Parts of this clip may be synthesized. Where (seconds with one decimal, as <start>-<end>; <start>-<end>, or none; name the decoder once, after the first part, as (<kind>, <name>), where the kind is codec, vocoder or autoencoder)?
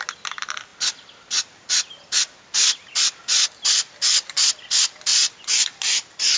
none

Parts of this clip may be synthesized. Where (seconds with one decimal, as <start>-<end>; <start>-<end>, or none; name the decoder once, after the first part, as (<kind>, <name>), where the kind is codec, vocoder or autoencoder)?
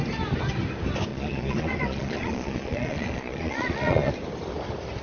1.1-4.1 (vocoder, Vocos)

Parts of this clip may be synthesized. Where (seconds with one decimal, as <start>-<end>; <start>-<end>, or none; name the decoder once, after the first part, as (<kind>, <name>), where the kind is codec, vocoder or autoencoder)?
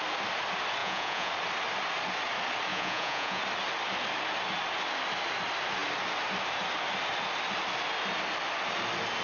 0.8-1.3 (vocoder, Vocos); 2.7-3.4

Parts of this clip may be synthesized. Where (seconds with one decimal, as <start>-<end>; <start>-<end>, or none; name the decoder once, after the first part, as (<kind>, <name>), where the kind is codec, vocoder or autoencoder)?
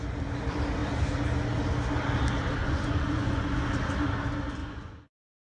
2.6-3.6 (vocoder, Vocos); 4.6-5.5